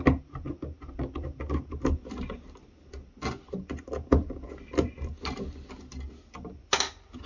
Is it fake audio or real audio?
real